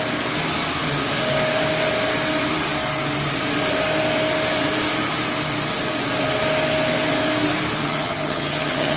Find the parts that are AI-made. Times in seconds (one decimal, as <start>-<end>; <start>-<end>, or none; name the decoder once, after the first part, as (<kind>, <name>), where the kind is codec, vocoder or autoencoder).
7.8-9.0 (vocoder, HiFi-GAN)